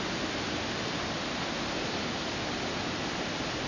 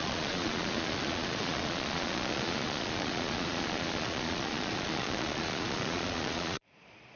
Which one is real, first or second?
first